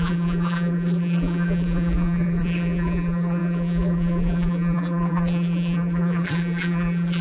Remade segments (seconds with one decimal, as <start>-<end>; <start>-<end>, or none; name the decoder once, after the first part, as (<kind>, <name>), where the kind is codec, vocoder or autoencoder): 0.0-7.2 (vocoder, BigVGAN v2)